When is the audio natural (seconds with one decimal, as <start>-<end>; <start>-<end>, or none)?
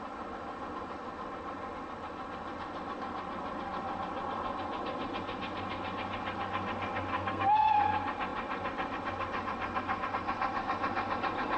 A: 0.0-7.1; 7.7-11.6